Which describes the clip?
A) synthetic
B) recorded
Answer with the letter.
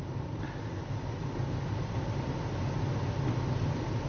B